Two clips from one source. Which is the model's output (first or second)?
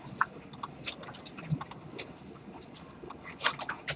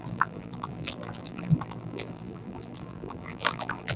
second